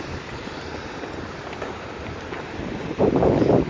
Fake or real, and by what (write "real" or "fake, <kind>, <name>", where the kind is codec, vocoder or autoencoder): real